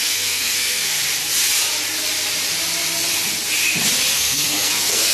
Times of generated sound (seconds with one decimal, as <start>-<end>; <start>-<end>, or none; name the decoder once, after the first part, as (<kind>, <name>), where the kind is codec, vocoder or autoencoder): 0.0-1.0 (codec, SNAC); 4.1-5.1